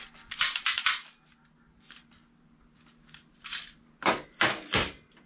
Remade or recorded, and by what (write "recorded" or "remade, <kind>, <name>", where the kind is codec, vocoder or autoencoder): recorded